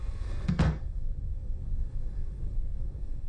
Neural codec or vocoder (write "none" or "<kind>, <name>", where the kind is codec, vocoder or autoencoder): codec, SNAC